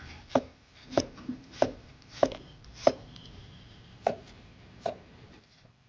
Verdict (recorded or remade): remade